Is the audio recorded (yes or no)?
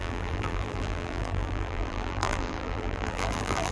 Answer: no